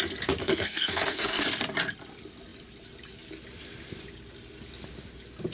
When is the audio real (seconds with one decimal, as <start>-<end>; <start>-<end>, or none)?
0.0-0.4; 1.4-5.5